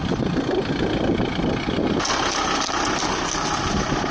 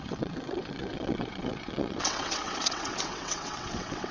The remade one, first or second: second